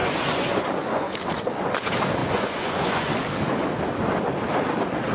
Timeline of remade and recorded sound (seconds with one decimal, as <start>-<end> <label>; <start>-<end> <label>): 0.0-1.1 remade; 1.1-2.2 recorded; 2.2-3.1 remade; 3.1-5.1 recorded

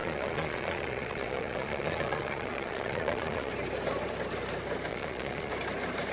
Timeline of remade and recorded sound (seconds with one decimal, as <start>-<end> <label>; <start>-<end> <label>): 0.0-3.5 remade; 3.5-4.9 recorded; 4.9-5.5 remade; 5.5-6.1 recorded

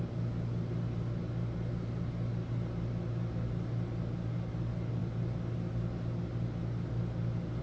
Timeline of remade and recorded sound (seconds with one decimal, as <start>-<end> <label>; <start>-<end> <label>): 0.0-7.6 recorded

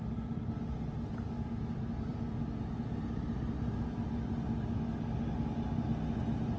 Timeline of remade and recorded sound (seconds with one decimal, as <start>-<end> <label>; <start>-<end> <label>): 0.0-6.6 recorded

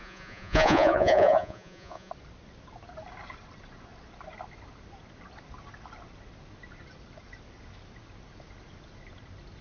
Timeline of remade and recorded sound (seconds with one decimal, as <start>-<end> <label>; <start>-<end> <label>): 0.0-2.1 remade; 2.1-9.6 recorded